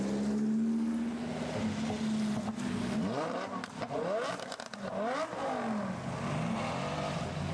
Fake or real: real